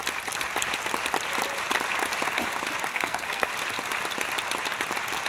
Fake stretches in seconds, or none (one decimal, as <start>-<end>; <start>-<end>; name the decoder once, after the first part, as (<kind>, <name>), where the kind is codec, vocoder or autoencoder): 2.9-3.5 (codec, SNAC)